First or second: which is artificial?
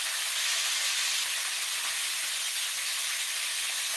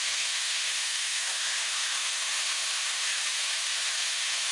second